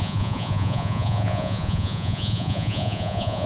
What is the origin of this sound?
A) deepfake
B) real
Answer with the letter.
A